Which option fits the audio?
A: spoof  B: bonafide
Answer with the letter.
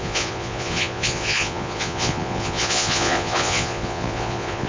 A